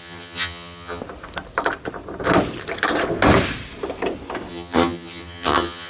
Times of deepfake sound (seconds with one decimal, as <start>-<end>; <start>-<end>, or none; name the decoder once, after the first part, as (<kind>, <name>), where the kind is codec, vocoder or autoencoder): 0.0-1.0 (vocoder, HiFi-GAN); 4.5-5.9